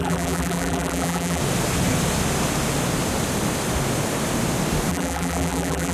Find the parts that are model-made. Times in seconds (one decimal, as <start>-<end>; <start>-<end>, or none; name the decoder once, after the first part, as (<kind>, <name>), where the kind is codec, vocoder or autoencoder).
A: 0.0-1.4 (vocoder, BigVGAN v2); 4.9-5.9